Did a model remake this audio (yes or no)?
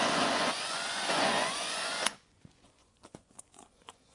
yes